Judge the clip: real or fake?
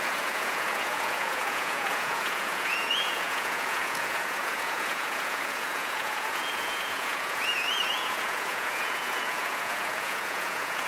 fake